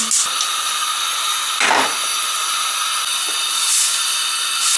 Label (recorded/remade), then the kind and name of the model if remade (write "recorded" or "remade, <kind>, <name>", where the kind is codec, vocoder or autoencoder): recorded